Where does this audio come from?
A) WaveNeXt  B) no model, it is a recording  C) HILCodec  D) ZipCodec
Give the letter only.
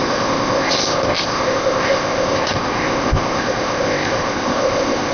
D